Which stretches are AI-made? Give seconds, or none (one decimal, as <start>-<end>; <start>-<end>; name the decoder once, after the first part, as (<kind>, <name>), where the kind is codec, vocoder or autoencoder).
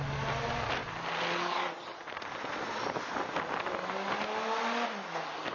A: none